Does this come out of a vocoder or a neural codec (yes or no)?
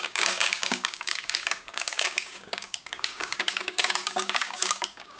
yes